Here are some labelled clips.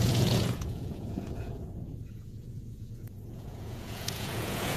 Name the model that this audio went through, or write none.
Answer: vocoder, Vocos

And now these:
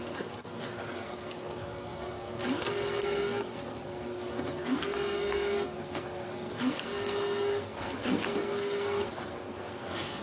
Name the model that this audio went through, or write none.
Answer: codec, SNAC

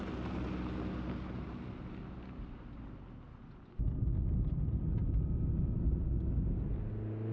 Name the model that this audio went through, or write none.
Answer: none